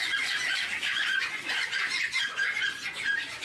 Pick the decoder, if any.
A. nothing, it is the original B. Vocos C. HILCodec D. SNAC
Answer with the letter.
B